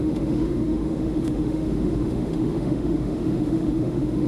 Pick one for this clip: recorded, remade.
remade